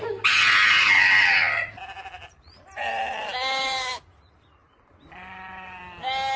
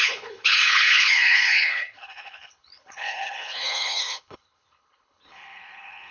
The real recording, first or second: first